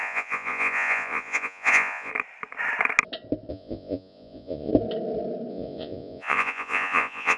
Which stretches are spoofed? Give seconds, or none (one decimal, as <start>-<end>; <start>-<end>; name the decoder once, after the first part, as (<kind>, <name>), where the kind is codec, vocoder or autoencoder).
0.0-2.1 (vocoder, Vocos); 3.5-4.7; 5.5-7.4